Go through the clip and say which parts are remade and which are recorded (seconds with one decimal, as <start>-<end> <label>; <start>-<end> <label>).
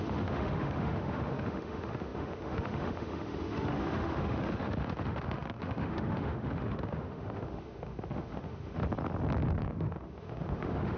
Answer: 0.0-8.8 remade; 8.8-9.6 recorded; 9.6-11.0 remade